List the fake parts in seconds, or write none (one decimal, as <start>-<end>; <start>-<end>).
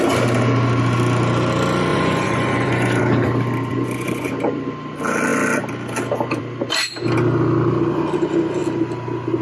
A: 1.9-3.0; 3.7-4.3